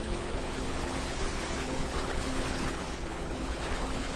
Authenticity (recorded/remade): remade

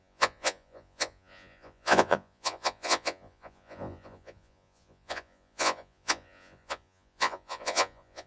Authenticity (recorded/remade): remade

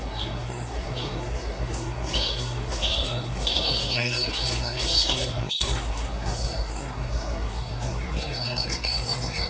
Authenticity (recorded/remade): remade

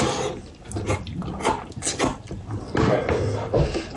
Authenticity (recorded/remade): recorded